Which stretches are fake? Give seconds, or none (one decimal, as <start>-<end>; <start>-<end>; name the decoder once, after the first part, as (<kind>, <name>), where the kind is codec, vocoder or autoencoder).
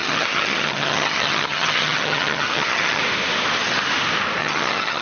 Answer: 0.0-3.0 (vocoder, HiFi-GAN); 4.4-5.0